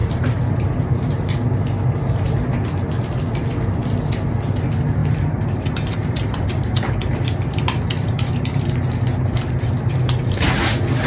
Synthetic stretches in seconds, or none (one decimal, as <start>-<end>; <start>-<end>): 0.0-1.3; 5.0-10.1

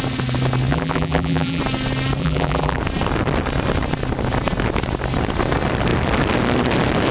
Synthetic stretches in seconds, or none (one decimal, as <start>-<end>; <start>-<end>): 0.7-1.6; 2.2-2.8

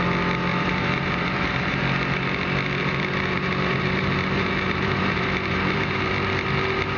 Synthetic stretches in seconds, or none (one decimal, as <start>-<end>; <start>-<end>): 0.5-1.8; 2.8-6.1

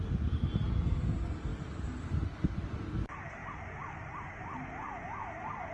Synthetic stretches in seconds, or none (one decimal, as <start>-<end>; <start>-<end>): none